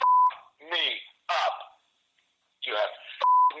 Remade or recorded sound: recorded